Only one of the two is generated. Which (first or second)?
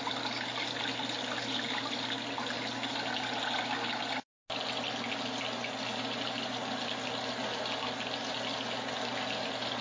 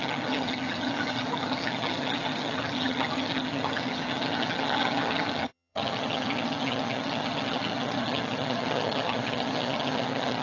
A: second